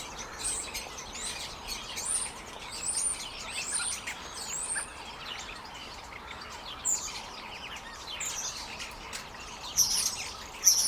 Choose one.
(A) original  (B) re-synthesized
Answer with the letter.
A